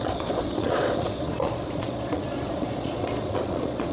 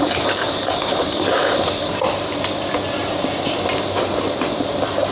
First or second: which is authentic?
second